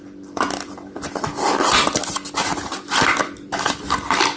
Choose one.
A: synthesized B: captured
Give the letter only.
B